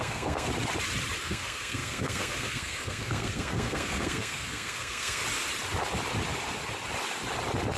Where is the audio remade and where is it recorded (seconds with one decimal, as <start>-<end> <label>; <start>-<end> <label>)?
0.0-0.5 remade; 0.5-1.2 recorded; 1.2-5.2 remade; 5.2-7.8 recorded